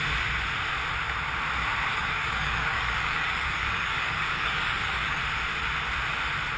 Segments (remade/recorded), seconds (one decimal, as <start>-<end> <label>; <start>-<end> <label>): 0.0-1.9 recorded; 1.9-5.2 remade; 5.2-6.6 recorded